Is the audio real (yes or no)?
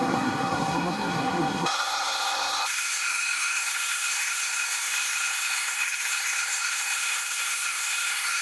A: no